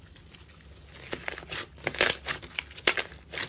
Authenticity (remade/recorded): recorded